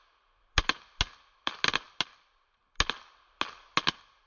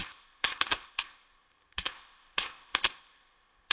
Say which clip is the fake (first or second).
second